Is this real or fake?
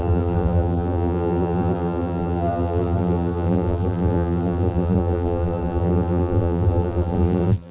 fake